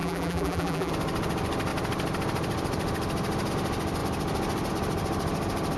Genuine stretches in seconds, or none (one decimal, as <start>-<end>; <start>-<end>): 0.9-5.8